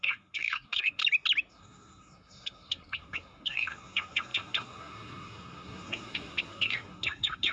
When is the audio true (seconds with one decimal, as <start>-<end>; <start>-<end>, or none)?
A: 1.0-1.5